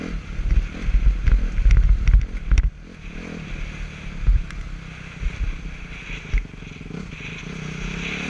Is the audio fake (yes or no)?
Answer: no